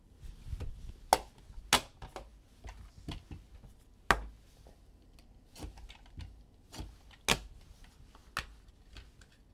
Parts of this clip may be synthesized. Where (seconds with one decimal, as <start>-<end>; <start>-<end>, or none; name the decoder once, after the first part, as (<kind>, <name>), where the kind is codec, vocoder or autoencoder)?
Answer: none